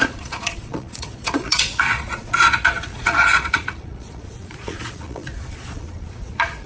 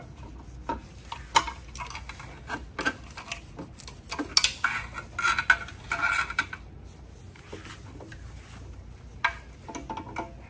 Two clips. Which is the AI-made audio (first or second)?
first